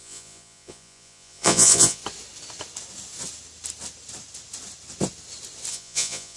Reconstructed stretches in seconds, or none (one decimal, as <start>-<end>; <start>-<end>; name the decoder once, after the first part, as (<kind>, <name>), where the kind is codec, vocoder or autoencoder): 0.0-2.0 (vocoder, Vocos); 5.7-6.4